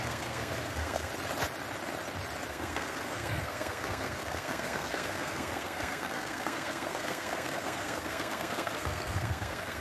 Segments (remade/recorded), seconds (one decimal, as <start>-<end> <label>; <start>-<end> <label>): 0.0-1.1 remade; 1.1-2.5 recorded; 2.5-9.8 remade